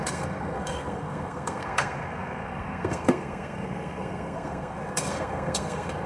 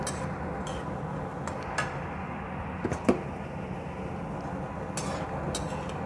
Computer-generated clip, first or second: first